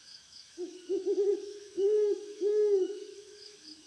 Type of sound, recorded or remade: remade